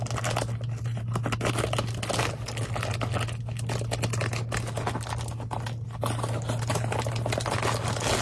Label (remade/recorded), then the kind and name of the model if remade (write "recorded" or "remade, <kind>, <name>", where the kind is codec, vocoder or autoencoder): recorded